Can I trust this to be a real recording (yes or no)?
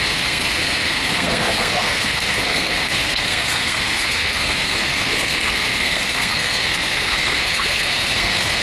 no